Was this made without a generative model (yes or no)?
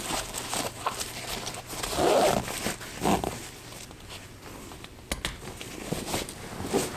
yes